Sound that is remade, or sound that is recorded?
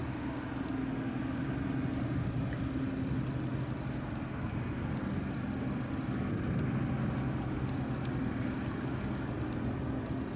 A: recorded